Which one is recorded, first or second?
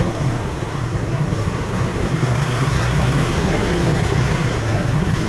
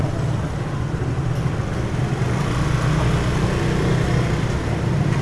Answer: second